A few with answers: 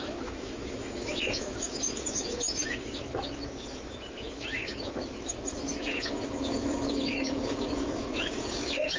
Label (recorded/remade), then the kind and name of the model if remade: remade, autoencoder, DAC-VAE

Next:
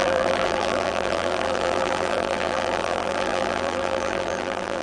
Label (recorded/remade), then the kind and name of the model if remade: remade, vocoder, BigVGAN v2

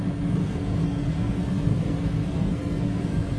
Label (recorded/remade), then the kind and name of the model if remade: remade, codec, SNAC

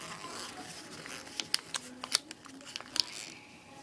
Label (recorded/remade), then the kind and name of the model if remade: recorded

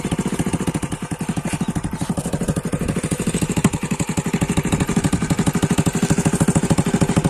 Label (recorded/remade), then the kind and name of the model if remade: recorded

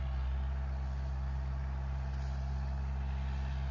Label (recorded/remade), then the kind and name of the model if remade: recorded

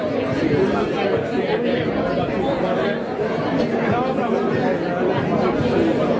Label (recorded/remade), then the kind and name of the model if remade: recorded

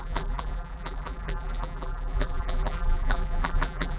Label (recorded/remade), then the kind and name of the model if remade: remade, vocoder, BigVGAN v2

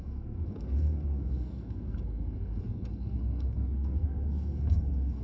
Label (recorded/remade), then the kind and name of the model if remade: remade, codec, SNAC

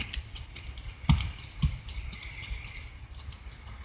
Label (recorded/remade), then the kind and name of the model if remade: recorded